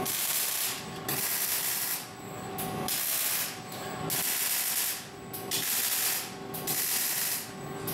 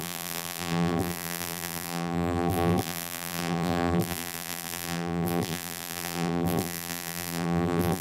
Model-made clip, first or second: second